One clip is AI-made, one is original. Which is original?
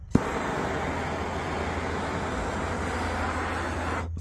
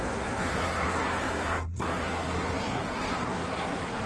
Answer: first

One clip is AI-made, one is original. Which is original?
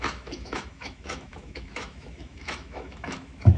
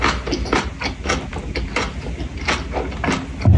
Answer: second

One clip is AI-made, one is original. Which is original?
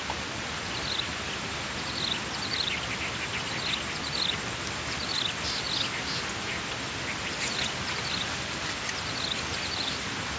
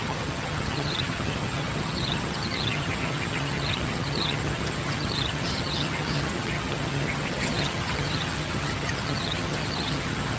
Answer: first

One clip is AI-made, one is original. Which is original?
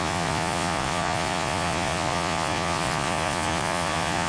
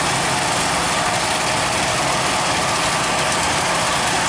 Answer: second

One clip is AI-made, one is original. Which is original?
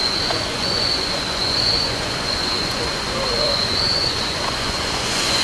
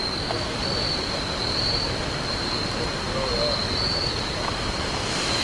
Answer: second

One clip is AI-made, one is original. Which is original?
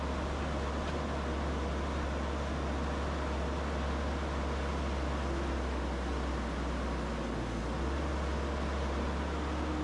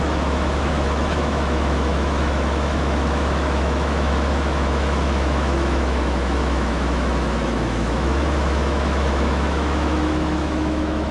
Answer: first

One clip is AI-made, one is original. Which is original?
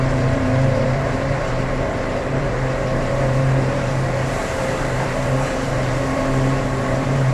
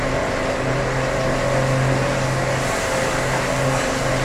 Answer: second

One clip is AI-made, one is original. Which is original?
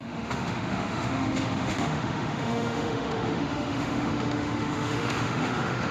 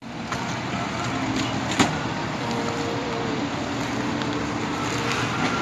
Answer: second